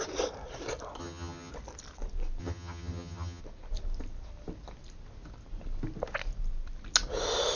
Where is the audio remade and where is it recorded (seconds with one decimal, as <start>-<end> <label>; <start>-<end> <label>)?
0.0-1.0 recorded; 1.0-1.5 remade; 1.5-2.4 recorded; 2.4-3.4 remade; 3.4-7.6 recorded